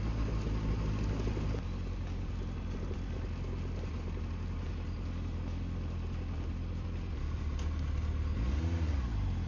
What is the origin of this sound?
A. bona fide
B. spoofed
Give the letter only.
A